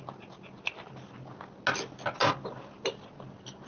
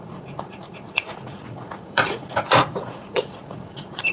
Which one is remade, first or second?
second